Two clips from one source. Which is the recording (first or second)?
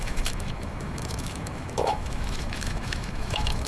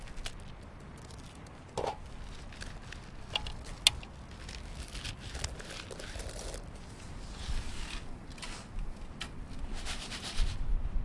second